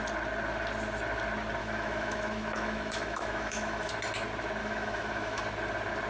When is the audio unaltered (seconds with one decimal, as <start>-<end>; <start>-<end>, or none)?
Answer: 0.0-1.6; 3.9-4.6; 5.4-6.1